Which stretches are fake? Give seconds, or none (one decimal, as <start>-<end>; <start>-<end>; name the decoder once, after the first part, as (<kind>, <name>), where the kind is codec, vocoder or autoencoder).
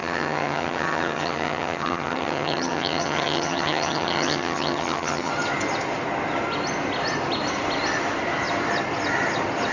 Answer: 0.0-5.3 (vocoder, HiFi-GAN)